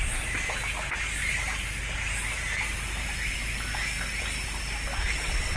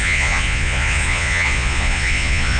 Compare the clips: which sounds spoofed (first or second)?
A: second